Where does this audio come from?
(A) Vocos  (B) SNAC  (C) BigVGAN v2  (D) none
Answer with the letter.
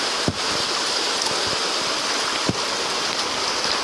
D